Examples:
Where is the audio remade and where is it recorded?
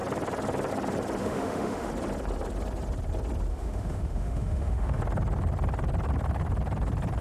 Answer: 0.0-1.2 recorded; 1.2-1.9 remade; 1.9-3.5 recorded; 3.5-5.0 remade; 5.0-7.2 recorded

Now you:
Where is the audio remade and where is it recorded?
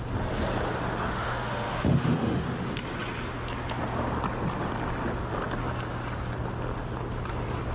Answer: 0.0-1.1 recorded; 1.1-2.6 remade; 2.6-7.7 recorded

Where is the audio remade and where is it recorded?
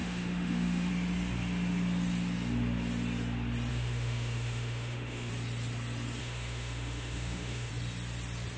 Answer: 0.0-0.9 remade; 0.9-3.7 recorded; 3.7-5.3 remade; 5.3-6.2 recorded; 6.2-7.7 remade; 7.7-8.6 recorded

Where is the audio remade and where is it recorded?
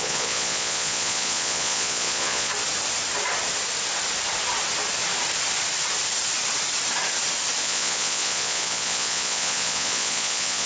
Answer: 0.0-2.5 remade; 2.5-7.6 recorded; 7.6-10.7 remade